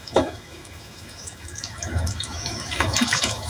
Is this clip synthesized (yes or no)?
yes